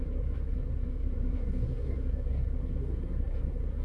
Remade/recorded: remade